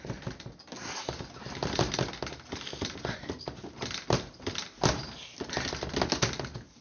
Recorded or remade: recorded